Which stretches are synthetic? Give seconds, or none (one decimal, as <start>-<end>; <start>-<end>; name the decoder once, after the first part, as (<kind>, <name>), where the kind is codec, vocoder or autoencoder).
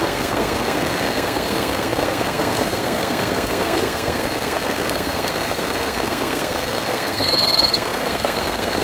0.0-8.8 (codec, SNAC)